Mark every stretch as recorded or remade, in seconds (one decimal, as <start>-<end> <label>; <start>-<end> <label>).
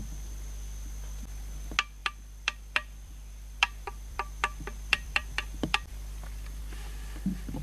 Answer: 0.0-2.0 recorded; 2.0-6.6 remade; 6.6-7.6 recorded